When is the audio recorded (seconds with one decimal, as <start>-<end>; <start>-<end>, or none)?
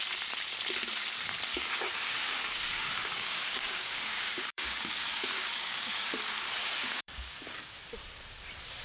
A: 0.0-1.5; 6.1-6.6; 7.4-8.8